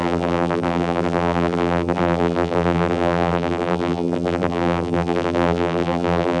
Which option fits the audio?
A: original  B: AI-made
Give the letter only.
B